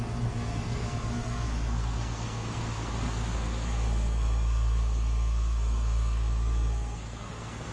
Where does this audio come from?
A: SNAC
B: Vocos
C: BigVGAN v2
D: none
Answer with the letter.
A